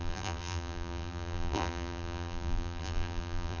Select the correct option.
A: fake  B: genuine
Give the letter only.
A